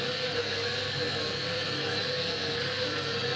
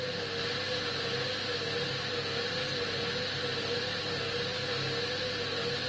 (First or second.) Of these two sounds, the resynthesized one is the first